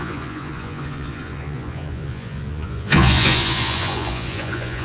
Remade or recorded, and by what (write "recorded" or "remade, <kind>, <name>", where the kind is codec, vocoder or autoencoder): remade, vocoder, Vocos